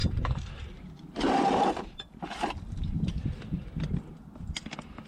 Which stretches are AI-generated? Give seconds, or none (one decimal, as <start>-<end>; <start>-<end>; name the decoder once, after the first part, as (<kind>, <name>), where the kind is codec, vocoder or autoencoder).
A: 0.0-3.1 (vocoder, BigVGAN v2)